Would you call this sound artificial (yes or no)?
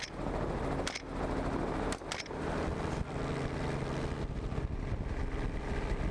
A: no